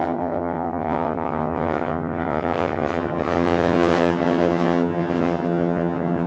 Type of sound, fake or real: fake